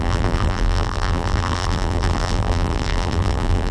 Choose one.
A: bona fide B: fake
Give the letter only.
B